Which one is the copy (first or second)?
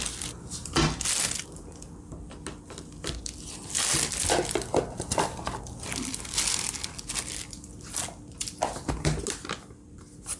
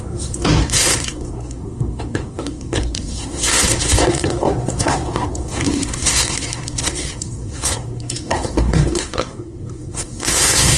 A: second